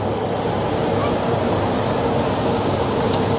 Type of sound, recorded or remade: recorded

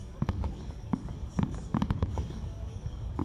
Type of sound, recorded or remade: remade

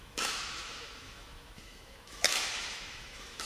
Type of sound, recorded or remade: remade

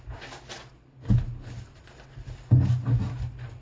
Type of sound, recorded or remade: recorded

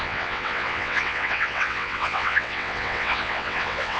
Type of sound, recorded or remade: remade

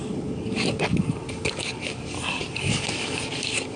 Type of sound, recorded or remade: remade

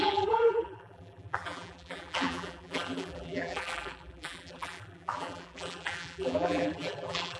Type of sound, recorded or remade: remade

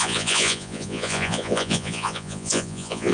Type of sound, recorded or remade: remade